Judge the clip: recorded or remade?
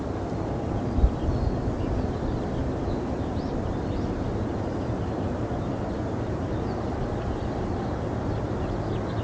recorded